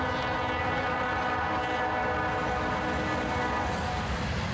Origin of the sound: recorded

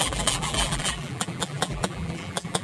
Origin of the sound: remade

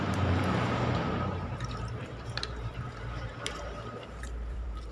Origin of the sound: remade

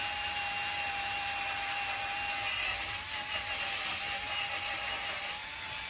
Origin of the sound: recorded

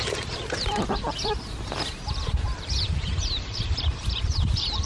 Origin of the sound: remade